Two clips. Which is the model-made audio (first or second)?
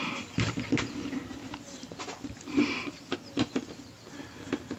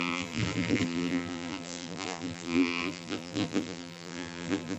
second